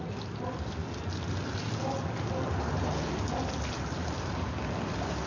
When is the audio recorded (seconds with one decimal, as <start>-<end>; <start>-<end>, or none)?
0.0-5.3